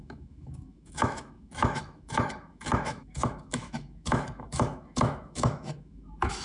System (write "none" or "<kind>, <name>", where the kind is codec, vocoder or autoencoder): autoencoder, DAC-VAE